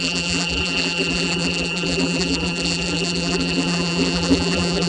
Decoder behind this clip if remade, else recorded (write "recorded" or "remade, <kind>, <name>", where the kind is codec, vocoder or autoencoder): remade, vocoder, BigVGAN v2